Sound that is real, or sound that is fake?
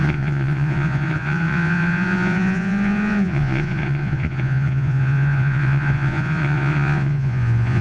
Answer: fake